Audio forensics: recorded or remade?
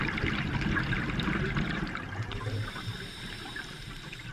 remade